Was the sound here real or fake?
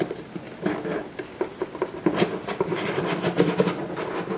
real